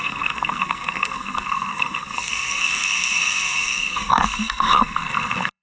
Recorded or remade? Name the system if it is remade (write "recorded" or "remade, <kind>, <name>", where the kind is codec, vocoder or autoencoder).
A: remade, codec, SNAC